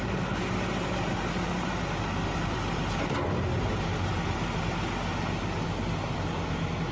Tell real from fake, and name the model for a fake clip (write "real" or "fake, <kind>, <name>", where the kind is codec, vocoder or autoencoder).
real